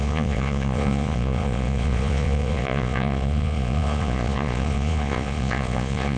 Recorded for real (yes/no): no